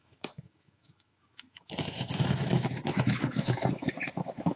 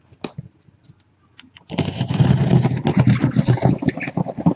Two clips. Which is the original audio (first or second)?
second